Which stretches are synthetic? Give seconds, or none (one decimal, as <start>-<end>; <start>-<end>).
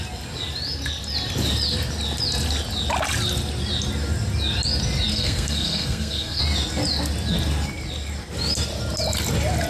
5.1-6.4